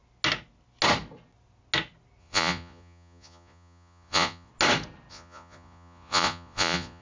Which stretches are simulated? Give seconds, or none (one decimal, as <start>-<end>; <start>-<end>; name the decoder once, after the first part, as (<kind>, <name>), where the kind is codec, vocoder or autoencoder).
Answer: 2.2-4.5 (vocoder, Vocos); 5.1-7.0